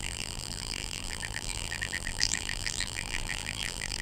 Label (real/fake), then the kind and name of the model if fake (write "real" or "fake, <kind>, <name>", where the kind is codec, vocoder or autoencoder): fake, vocoder, BigVGAN v2